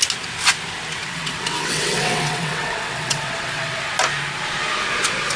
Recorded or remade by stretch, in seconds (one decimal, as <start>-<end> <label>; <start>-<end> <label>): 0.0-1.0 recorded; 1.0-3.9 remade; 3.9-5.4 recorded